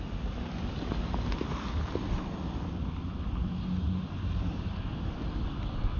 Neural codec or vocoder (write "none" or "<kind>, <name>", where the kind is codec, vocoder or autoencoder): none